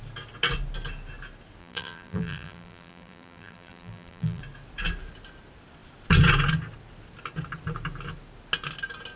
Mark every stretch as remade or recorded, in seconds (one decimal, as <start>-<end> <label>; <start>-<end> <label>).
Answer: 0.0-1.6 recorded; 1.6-4.4 remade; 4.4-9.2 recorded

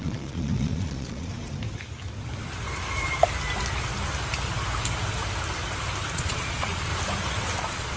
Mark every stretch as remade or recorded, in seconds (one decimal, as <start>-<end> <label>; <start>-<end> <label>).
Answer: 0.0-1.3 remade; 1.3-6.1 recorded; 6.1-6.9 remade; 6.9-7.6 recorded; 7.6-8.0 remade

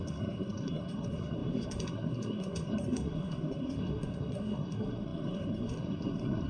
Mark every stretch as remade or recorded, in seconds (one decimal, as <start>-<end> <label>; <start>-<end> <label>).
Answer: 0.0-6.5 remade

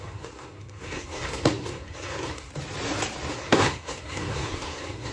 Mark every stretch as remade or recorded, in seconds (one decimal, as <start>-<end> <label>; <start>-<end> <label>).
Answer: 0.0-2.5 remade; 2.5-3.3 recorded; 3.3-5.1 remade